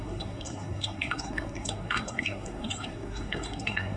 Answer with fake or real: fake